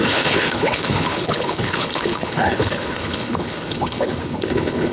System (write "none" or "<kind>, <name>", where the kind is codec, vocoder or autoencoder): codec, HILCodec